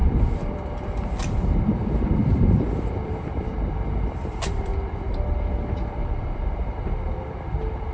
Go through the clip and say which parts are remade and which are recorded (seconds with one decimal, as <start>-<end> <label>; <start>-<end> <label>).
0.0-1.2 remade; 1.2-1.7 recorded; 1.7-4.7 remade; 4.7-5.8 recorded; 5.8-7.9 remade